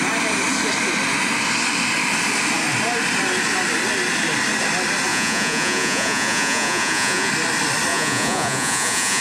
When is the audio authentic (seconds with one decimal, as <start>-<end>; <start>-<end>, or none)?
0.0-5.1; 7.3-7.9